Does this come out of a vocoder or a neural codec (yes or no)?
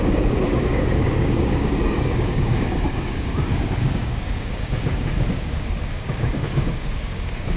yes